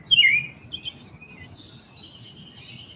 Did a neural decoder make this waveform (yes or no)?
no